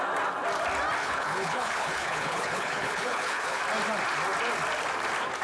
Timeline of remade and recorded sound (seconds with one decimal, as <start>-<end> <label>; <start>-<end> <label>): 0.0-1.0 recorded; 1.0-3.6 remade; 3.6-5.4 recorded

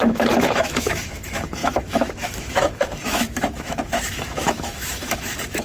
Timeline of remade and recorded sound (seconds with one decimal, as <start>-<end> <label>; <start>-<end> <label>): 0.0-5.6 remade

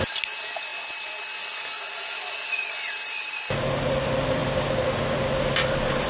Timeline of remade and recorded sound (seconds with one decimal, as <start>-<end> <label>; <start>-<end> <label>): 0.0-6.1 recorded